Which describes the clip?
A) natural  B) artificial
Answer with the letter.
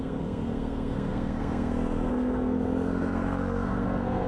B